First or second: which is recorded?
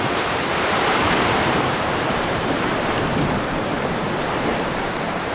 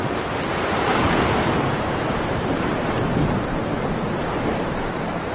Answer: second